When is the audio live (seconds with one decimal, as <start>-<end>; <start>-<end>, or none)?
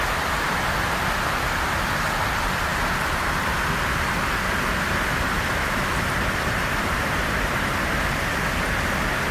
0.0-9.3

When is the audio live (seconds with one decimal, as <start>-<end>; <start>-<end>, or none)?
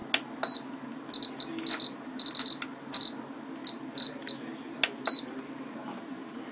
0.0-6.5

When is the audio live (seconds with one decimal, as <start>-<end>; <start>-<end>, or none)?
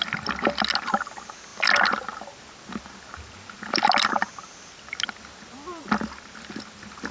0.0-7.1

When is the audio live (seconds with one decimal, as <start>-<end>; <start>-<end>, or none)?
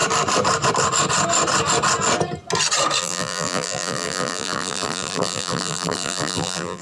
0.0-3.0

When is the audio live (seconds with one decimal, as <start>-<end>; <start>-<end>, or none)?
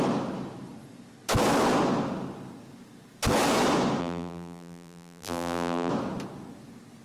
0.0-4.0; 5.9-7.0